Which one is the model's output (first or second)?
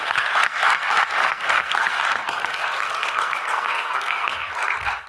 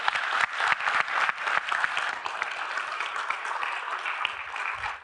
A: first